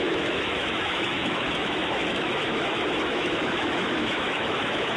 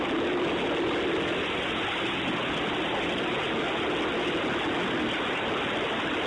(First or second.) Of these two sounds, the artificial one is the first